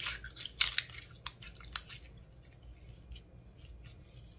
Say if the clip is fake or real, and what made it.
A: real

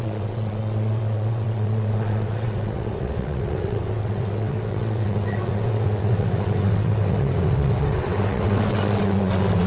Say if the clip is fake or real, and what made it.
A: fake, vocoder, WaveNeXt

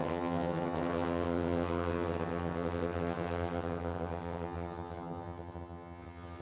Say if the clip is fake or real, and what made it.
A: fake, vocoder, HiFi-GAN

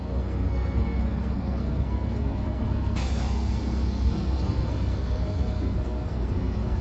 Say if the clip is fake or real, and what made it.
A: fake, codec, SNAC